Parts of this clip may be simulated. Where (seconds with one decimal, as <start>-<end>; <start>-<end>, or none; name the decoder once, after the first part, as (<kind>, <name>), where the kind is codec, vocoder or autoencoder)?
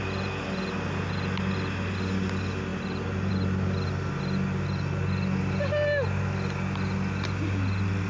none